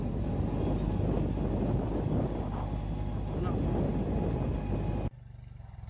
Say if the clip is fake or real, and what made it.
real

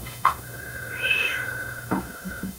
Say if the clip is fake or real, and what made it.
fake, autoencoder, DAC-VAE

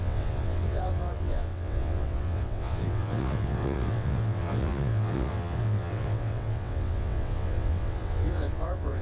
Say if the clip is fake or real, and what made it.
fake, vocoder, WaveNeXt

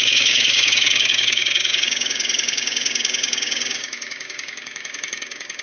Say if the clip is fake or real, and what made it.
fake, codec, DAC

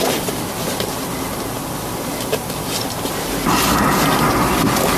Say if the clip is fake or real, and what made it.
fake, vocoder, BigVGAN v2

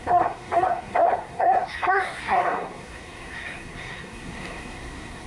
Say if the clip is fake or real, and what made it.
fake, codec, SNAC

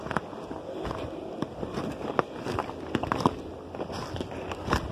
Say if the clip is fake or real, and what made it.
real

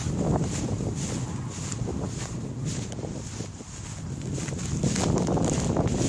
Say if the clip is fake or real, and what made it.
real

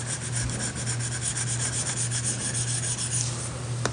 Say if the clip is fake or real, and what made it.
real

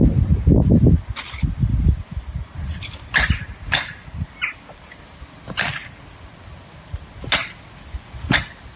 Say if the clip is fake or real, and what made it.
real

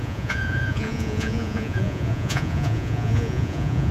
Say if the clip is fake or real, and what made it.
fake, vocoder, Vocos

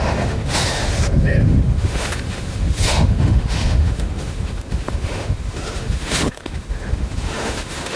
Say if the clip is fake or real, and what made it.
fake, autoencoder, DAC-VAE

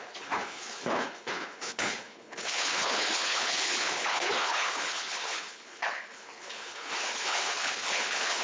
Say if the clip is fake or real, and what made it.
fake, codec, HILCodec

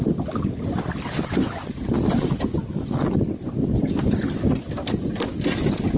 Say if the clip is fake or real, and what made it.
real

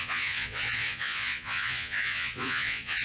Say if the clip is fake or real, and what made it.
fake, vocoder, Vocos